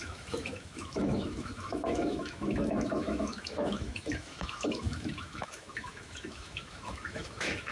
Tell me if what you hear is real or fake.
fake